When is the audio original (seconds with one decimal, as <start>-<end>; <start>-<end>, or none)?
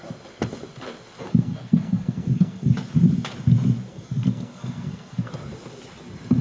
0.0-1.2; 2.7-3.9; 5.3-6.4